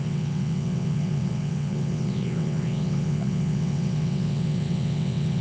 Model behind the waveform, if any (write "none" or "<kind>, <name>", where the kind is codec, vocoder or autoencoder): vocoder, WaveNeXt